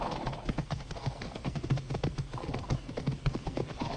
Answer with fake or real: fake